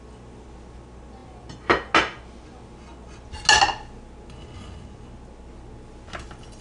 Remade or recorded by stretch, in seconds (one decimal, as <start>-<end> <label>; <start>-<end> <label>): 0.0-6.6 recorded

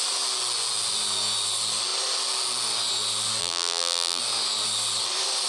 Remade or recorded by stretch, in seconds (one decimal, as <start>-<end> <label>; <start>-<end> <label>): 0.0-3.4 recorded; 3.4-4.2 remade; 4.2-5.5 recorded

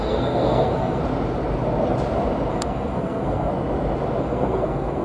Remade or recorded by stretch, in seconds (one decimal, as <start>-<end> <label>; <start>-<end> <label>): 0.0-1.0 remade; 1.0-2.5 recorded; 2.5-3.5 remade; 3.5-4.2 recorded; 4.2-5.0 remade

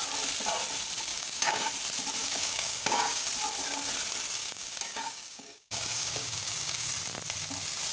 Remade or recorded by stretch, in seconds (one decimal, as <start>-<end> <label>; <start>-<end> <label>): 0.0-1.1 recorded; 1.1-1.7 remade; 1.7-2.2 recorded; 2.2-3.3 remade; 3.3-4.4 recorded; 4.4-6.9 remade; 6.9-7.9 recorded

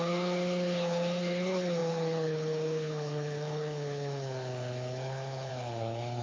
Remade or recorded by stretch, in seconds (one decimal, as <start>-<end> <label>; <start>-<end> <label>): 0.0-6.2 remade

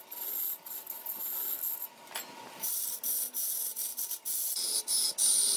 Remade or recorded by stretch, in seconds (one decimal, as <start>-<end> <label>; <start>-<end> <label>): 0.0-5.6 recorded

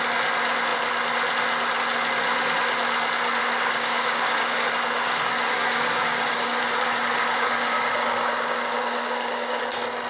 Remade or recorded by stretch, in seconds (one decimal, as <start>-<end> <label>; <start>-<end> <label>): 0.0-3.4 recorded; 3.4-6.6 remade; 6.6-7.2 recorded; 7.2-9.6 remade; 9.6-10.1 recorded